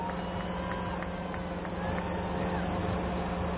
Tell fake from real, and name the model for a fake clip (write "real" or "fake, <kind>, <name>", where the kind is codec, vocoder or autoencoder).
real